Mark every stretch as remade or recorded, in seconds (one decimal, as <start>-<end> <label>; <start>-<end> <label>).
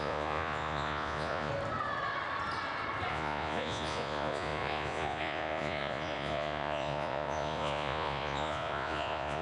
0.0-1.5 remade; 1.5-3.1 recorded; 3.1-9.4 remade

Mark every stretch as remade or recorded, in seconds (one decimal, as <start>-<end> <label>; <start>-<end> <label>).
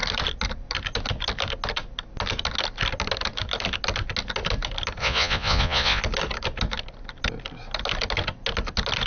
0.0-5.0 recorded; 5.0-6.0 remade; 6.0-9.1 recorded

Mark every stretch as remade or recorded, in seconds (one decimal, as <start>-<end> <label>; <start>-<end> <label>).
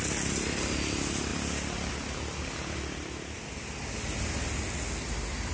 0.0-5.5 recorded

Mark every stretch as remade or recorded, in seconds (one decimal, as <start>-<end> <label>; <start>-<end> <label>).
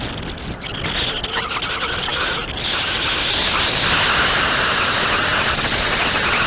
0.0-6.5 recorded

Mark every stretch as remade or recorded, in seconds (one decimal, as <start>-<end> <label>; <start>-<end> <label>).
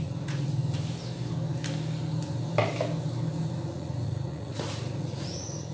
0.0-0.6 remade; 0.6-3.7 recorded; 3.7-5.7 remade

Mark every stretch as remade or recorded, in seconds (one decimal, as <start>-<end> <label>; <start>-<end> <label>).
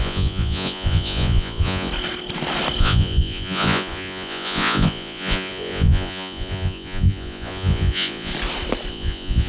0.0-1.9 remade; 1.9-2.8 recorded; 2.8-8.3 remade; 8.3-8.9 recorded; 8.9-9.5 remade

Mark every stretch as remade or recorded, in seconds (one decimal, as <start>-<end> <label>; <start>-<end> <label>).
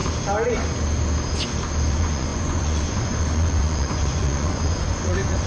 0.0-1.9 recorded; 1.9-5.5 remade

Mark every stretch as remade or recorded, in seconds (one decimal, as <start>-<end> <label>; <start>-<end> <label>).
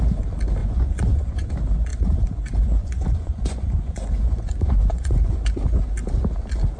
0.0-0.6 recorded; 0.6-1.5 remade; 1.5-1.9 recorded; 1.9-5.3 remade; 5.3-6.8 recorded